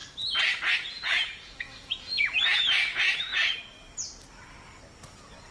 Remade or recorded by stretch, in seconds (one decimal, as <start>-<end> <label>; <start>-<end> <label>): 0.0-0.7 recorded; 0.7-3.3 remade; 3.3-5.5 recorded